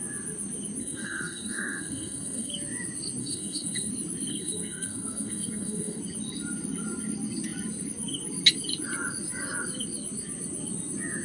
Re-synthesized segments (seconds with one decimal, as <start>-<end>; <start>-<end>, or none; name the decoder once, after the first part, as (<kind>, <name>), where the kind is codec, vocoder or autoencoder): 0.8-2.5 (codec, SNAC); 3.2-3.9; 4.3-6.0